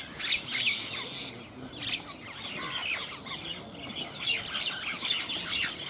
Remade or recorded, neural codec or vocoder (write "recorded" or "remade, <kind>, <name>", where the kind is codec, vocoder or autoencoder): recorded